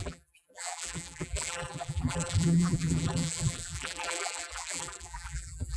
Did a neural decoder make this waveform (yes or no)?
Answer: yes